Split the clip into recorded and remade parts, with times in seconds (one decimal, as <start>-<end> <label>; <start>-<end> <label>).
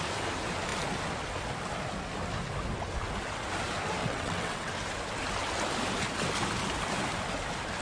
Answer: 0.0-4.0 recorded; 4.0-4.7 remade; 4.7-7.8 recorded